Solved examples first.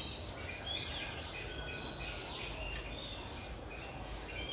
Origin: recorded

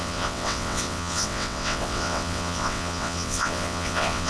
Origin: remade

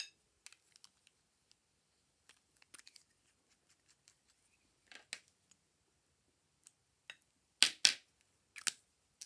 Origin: recorded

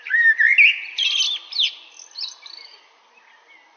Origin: recorded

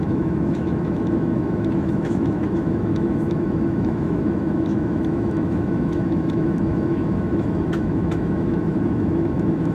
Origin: remade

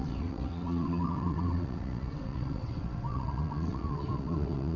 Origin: remade